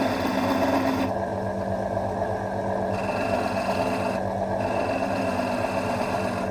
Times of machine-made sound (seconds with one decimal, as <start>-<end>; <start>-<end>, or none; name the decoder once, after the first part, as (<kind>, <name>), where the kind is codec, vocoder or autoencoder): none